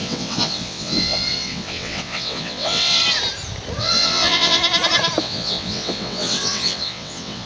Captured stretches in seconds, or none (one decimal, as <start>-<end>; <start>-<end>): 3.0-3.8; 4.6-5.2

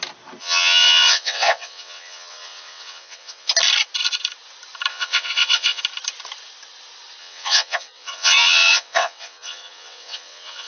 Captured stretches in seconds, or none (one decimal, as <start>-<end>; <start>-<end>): 0.0-0.4; 3.5-4.9; 5.8-7.2

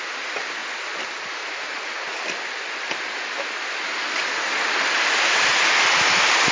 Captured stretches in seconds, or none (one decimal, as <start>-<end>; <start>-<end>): 0.0-6.5

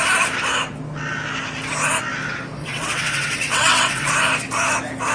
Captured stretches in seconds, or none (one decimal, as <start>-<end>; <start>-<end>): 0.0-2.6; 4.1-5.1

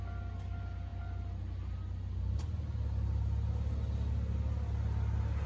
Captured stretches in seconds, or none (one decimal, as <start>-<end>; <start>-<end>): 0.0-5.5